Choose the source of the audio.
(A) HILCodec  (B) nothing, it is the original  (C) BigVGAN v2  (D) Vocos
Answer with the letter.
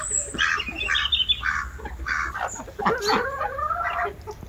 B